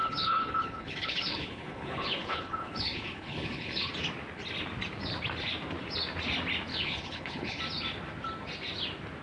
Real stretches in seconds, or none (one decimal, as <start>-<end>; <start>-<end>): 3.9-6.7; 7.6-9.2